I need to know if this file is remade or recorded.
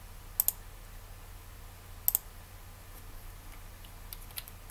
recorded